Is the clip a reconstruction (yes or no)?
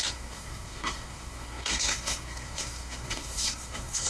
yes